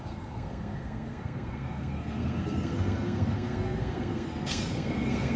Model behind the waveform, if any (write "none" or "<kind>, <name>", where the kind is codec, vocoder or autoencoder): codec, SNAC